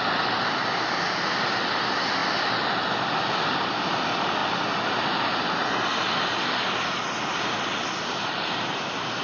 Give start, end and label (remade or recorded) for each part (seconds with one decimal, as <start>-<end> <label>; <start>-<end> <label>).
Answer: 0.0-9.2 recorded